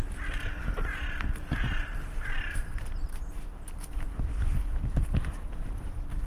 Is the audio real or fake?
fake